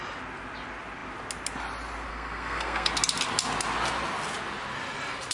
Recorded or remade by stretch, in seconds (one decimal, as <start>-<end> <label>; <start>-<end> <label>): 0.0-2.1 recorded; 2.1-2.9 remade; 2.9-5.3 recorded